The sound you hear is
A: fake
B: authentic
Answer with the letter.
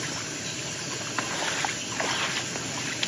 B